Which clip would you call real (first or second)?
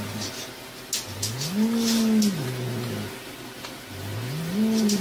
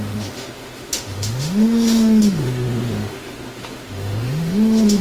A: first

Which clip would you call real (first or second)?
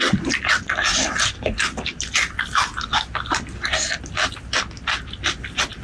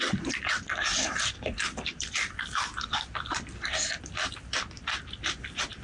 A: first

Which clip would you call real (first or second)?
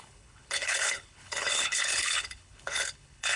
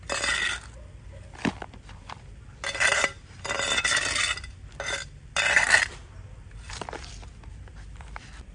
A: second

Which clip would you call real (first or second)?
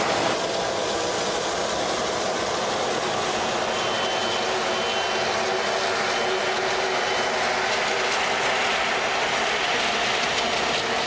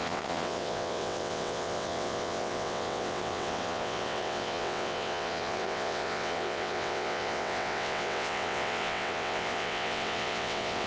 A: first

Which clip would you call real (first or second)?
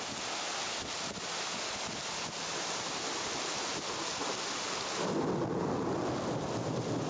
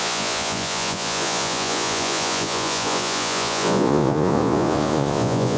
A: first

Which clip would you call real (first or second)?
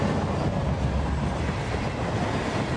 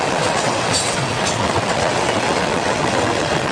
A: first